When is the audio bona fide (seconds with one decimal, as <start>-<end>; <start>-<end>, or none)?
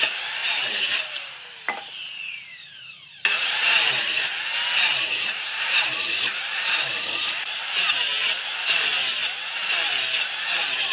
0.0-0.4; 4.4-4.9; 7.7-9.2; 9.7-10.9